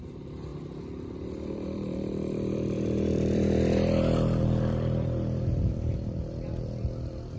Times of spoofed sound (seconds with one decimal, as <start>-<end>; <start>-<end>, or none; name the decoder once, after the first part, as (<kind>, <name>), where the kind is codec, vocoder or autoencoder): 0.0-0.5 (vocoder, BigVGAN v2); 1.5-7.4

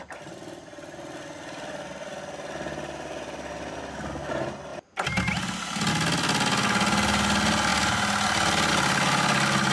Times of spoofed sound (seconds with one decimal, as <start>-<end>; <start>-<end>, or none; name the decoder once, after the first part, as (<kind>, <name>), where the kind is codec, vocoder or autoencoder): none

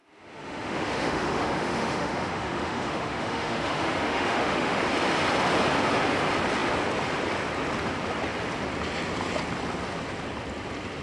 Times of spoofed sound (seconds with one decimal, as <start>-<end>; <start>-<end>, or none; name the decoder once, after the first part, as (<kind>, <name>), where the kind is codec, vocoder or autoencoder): 0.0-4.8 (autoencoder, DAC-VAE)